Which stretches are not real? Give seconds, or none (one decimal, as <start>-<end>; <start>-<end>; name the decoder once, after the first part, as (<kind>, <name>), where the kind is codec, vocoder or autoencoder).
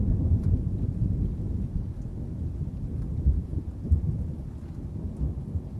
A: 0.0-2.1 (vocoder, BigVGAN v2); 2.7-3.5